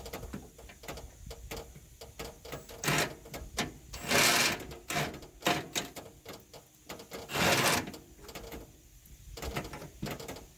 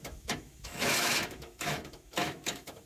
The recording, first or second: first